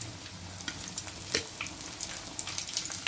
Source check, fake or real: real